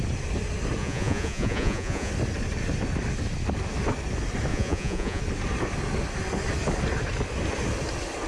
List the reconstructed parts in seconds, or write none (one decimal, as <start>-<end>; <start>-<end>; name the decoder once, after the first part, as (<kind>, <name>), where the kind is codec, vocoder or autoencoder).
0.8-2.1 (vocoder, Vocos); 4.5-5.2